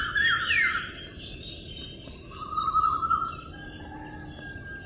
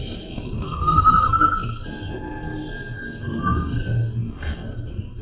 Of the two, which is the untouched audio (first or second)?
first